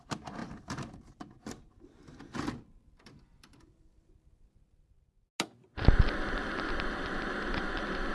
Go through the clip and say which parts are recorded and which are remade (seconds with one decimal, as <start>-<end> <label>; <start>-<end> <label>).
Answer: 0.0-0.4 recorded; 0.4-5.1 remade; 5.1-8.1 recorded